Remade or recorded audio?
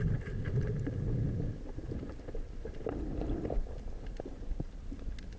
recorded